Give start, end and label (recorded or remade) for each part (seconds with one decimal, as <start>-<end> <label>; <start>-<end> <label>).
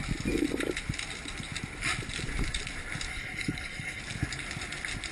0.0-3.1 recorded; 3.1-4.0 remade; 4.0-5.1 recorded